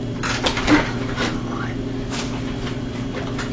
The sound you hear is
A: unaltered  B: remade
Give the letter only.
A